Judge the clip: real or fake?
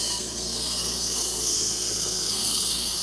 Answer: fake